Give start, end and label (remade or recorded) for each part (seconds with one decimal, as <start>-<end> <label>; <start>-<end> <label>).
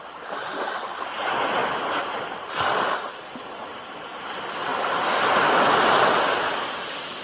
0.0-7.2 recorded